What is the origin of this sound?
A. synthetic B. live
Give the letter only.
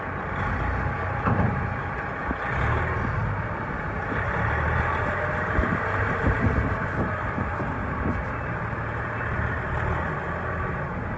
B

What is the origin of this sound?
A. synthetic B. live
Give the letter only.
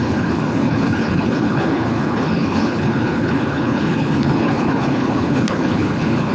A